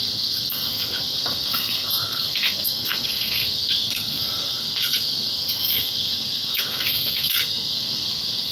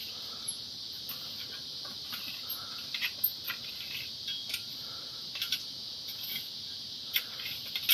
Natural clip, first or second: second